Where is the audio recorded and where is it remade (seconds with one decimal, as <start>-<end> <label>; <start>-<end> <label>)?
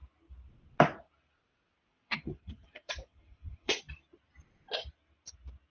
0.0-1.9 recorded; 1.9-3.8 remade; 3.8-5.7 recorded